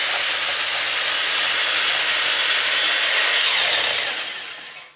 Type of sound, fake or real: real